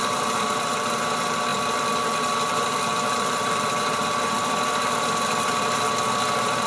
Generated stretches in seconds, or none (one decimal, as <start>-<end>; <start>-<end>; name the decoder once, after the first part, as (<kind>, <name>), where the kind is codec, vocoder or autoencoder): 0.0-6.7 (vocoder, BigVGAN v2)